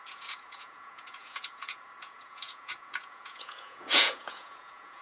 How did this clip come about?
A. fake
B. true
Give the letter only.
A